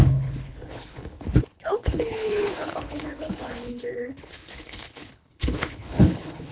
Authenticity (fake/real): fake